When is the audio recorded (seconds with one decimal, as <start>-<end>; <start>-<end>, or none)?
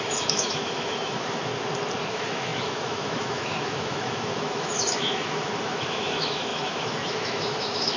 1.5-2.1